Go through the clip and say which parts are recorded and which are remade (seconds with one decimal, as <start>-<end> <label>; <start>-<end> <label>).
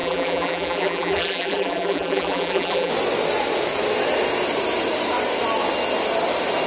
0.0-2.9 remade; 2.9-6.7 recorded